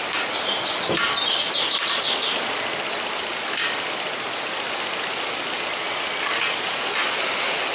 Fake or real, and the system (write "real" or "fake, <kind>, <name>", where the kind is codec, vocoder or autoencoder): real